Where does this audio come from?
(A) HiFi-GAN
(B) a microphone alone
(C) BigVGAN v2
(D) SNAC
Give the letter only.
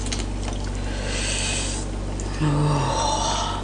B